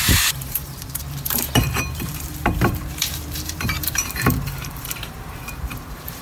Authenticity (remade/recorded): remade